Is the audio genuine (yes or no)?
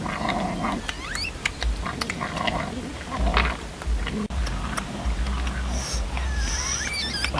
yes